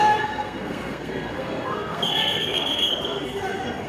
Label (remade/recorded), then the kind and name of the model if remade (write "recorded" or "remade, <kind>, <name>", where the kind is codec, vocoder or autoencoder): remade, codec, SNAC